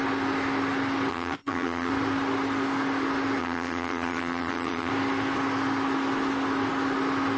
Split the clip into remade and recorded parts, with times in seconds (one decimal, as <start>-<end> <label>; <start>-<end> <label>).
0.0-1.1 recorded; 1.1-1.9 remade; 1.9-3.4 recorded; 3.4-4.9 remade; 4.9-7.4 recorded